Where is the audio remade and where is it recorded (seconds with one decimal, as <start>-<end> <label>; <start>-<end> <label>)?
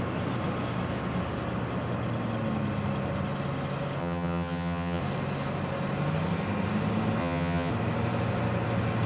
0.0-4.0 recorded; 4.0-5.0 remade; 5.0-7.2 recorded; 7.2-7.7 remade; 7.7-9.1 recorded